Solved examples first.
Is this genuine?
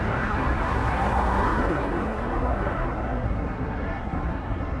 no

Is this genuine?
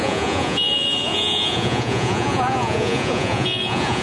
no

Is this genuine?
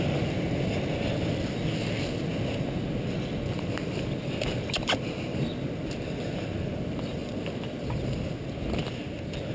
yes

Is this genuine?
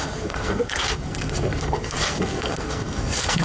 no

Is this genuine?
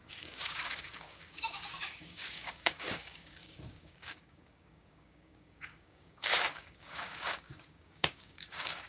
no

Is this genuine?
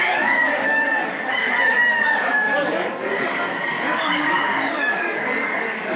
no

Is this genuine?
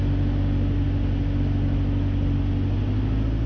yes